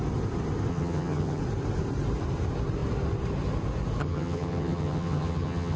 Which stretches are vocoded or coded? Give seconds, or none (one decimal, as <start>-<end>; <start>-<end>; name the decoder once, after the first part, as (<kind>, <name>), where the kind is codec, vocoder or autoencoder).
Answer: 0.7-1.4 (vocoder, HiFi-GAN); 4.0-5.8